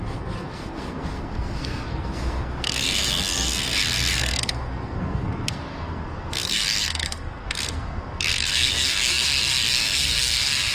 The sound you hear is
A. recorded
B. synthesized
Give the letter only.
B